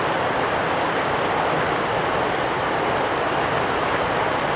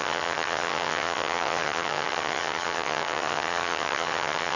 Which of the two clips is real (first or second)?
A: first